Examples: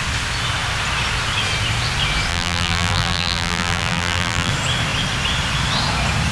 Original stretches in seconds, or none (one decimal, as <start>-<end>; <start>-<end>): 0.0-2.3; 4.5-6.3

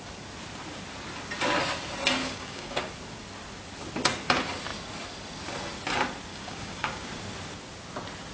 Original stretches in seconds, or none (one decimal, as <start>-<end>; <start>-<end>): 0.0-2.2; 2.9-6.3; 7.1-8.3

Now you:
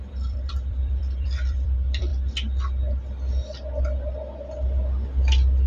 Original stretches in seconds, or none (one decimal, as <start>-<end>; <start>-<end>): 2.1-5.7

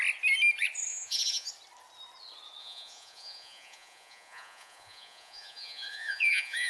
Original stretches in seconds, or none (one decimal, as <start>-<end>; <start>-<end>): 0.0-0.9; 1.5-2.6

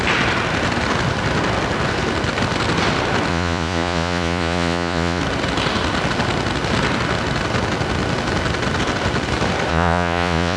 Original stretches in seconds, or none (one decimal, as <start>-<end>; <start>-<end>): 0.0-3.3; 5.2-9.7

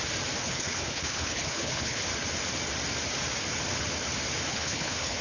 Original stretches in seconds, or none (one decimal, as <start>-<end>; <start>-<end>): 0.0-0.4; 2.0-4.5

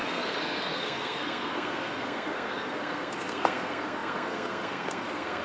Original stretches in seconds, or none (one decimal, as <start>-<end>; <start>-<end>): none

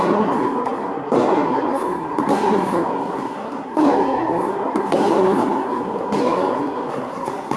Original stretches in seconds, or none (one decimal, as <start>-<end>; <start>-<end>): none